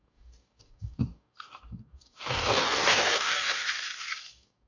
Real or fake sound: fake